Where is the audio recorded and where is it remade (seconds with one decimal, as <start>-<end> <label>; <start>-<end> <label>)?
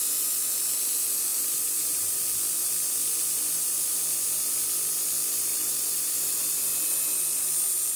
0.0-1.3 recorded; 1.3-2.2 remade; 2.2-5.5 recorded; 5.5-6.6 remade; 6.6-8.0 recorded